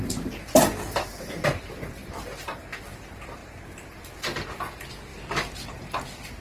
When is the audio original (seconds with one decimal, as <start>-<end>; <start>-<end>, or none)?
none